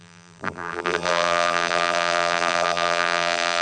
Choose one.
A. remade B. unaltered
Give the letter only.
A